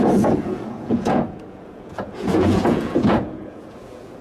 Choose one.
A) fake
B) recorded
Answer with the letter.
A